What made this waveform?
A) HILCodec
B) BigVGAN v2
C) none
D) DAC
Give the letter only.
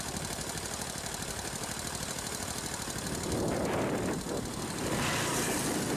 C